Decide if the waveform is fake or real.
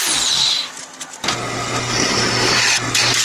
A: real